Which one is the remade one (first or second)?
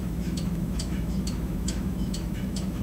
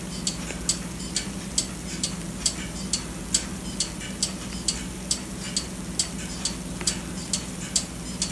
first